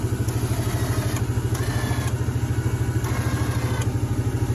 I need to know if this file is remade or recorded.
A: recorded